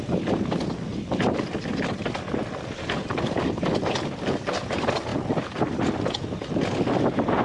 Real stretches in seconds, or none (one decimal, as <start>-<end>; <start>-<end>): 0.0-7.4